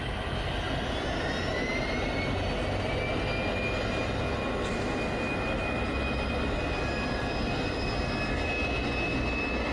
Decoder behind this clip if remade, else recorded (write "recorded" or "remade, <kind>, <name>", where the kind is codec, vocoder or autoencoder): recorded